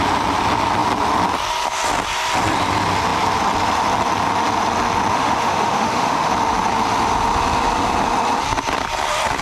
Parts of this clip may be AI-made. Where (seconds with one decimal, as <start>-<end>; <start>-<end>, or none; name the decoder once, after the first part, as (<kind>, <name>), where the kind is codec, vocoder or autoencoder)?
5.1-6.3 (autoencoder, DAC-VAE)